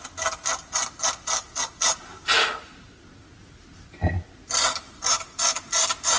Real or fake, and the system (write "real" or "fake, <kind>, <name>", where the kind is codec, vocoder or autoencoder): real